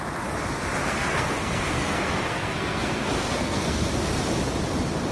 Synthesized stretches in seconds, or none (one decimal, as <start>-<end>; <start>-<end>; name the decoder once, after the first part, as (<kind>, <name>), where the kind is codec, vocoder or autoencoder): 0.8-3.9 (codec, SNAC)